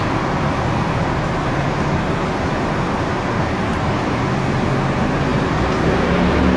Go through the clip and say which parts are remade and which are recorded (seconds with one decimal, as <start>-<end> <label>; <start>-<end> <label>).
0.0-6.6 recorded